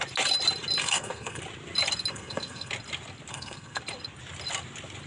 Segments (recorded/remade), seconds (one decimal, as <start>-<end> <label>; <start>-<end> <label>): 0.0-0.8 recorded; 0.8-1.4 remade; 1.4-2.1 recorded; 2.1-2.7 remade; 2.7-3.3 recorded; 3.3-3.8 remade; 3.8-5.1 recorded